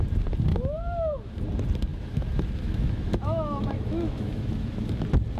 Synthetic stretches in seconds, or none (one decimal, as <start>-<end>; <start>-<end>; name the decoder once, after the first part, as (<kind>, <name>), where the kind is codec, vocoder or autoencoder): 0.5-1.4 (autoencoder, DAC-VAE); 1.9-5.0